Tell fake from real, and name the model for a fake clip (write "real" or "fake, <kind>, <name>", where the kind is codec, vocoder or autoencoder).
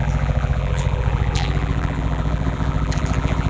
fake, vocoder, BigVGAN v2